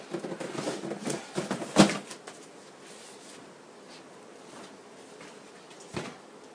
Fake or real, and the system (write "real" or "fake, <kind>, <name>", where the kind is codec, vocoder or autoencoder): real